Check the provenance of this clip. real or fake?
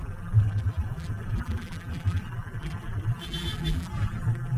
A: fake